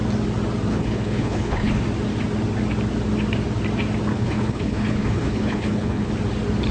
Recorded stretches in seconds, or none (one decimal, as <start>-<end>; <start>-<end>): 0.0-0.7; 1.8-4.1; 6.1-6.7